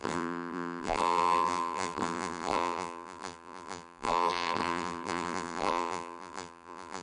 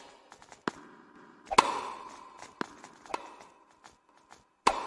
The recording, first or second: second